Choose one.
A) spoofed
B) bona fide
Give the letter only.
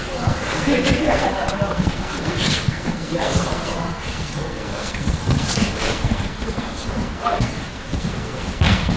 A